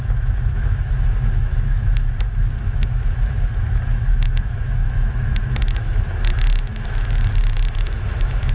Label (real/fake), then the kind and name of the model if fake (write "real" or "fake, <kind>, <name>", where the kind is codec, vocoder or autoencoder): fake, autoencoder, DAC-VAE